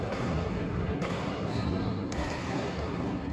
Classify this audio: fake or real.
fake